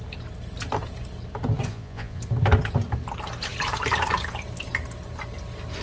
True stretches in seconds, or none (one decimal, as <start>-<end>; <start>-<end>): 0.0-1.7; 2.2-5.8